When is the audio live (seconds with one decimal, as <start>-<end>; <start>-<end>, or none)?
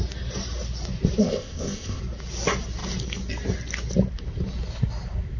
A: 0.0-1.2; 2.0-5.4